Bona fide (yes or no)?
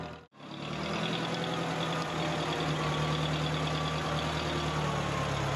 yes